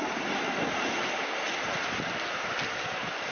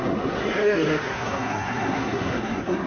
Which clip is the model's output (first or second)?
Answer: second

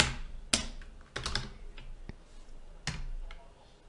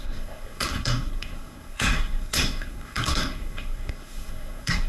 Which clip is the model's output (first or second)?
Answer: second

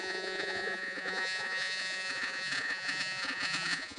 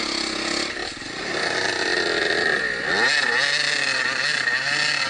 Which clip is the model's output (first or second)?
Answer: first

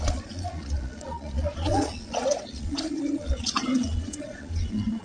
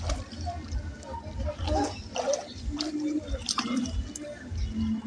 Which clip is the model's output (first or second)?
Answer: first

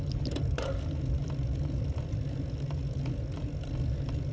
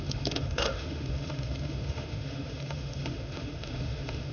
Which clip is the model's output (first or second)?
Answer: second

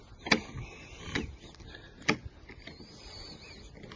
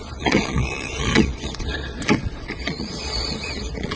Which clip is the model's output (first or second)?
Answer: second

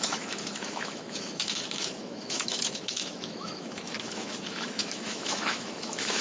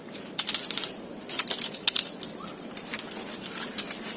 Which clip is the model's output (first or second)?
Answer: first